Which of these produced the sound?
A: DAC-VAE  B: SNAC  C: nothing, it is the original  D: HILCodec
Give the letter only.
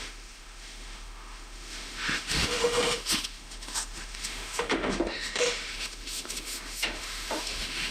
A